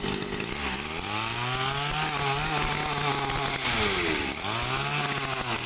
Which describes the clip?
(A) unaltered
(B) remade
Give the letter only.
A